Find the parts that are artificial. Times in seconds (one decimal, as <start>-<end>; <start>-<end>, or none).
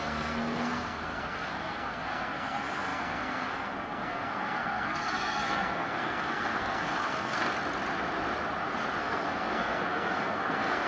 0.0-7.5; 9.0-10.9